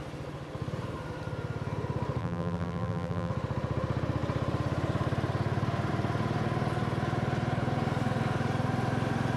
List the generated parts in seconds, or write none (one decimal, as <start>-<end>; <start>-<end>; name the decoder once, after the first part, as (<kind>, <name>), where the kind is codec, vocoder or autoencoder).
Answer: 2.2-3.3 (vocoder, BigVGAN v2)